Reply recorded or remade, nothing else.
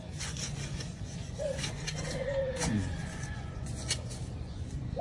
remade